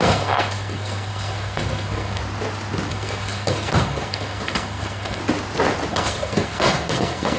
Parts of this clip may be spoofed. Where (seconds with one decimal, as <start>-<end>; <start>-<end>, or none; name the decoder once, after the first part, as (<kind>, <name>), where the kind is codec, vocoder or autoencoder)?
0.0-2.2 (codec, SNAC); 2.9-5.2; 5.9-7.4